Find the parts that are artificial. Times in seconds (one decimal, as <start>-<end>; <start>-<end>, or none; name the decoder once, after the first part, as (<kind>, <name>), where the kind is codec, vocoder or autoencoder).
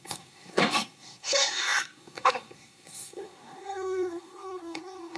0.0-5.2 (codec, SNAC)